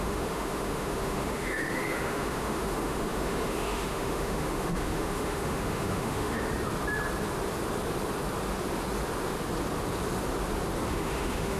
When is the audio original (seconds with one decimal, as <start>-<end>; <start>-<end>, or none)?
6.5-10.9